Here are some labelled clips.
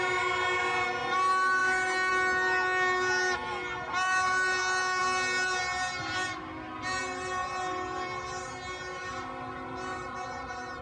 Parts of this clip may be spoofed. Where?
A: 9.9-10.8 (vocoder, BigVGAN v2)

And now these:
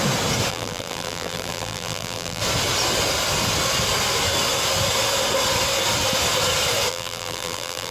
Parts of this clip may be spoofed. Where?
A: 0.5-2.4 (vocoder, BigVGAN v2); 6.9-7.9

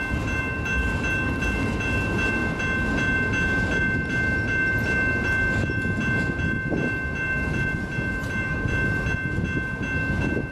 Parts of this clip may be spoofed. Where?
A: none

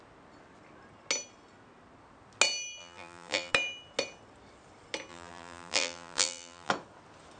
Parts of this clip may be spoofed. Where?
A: 2.8-3.5 (vocoder, BigVGAN v2); 5.1-6.7

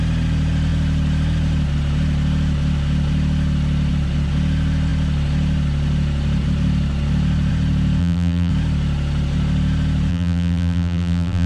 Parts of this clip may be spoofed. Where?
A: 8.0-8.5 (vocoder, BigVGAN v2); 10.1-11.5